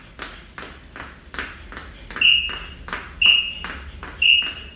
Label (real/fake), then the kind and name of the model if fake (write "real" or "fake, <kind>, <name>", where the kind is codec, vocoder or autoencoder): real